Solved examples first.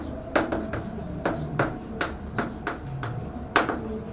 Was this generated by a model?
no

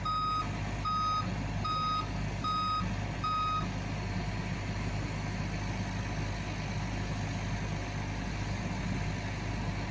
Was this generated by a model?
no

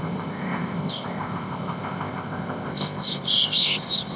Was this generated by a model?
yes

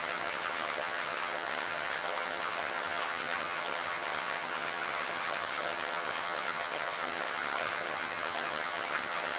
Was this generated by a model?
yes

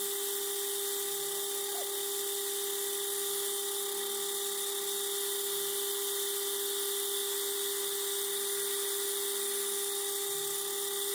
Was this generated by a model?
no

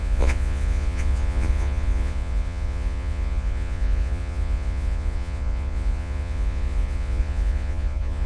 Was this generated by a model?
yes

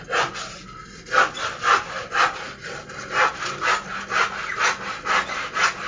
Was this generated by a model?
no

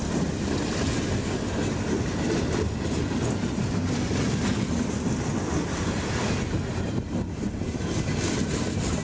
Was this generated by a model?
no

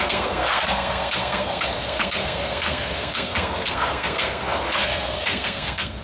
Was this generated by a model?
yes